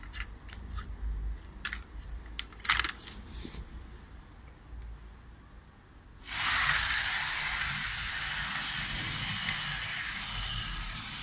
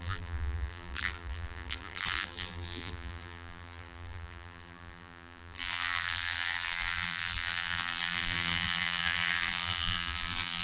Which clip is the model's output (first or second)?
second